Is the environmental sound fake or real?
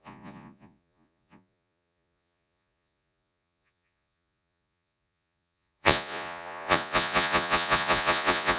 fake